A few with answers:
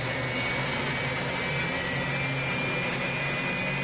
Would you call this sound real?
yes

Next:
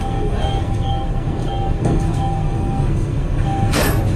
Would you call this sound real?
no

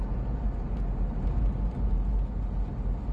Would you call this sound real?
yes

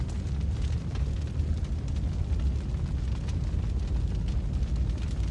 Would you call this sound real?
yes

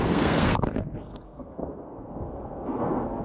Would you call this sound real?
no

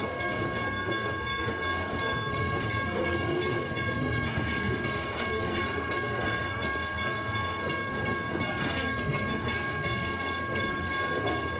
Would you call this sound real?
no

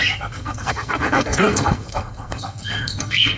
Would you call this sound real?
no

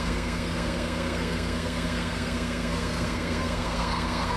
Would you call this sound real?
no